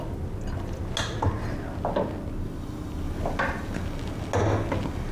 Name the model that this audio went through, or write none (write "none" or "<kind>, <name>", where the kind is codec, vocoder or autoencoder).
none